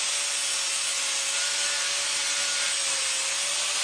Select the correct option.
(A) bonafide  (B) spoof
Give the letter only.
A